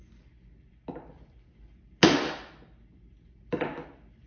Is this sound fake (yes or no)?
no